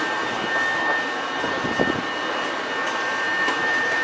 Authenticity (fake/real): real